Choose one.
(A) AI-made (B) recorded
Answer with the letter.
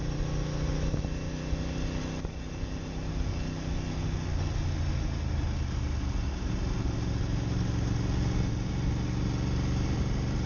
B